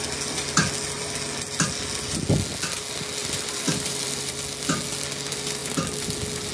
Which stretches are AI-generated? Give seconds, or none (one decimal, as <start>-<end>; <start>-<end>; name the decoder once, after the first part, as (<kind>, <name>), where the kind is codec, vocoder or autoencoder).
3.2-4.4 (vocoder, BigVGAN v2)